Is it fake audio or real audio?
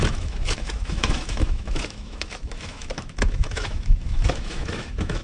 fake